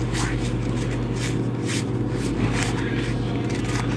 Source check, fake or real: real